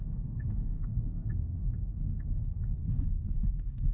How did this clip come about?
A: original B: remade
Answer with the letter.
B